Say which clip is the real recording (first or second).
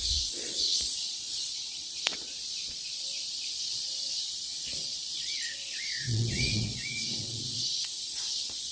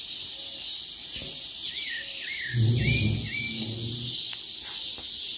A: second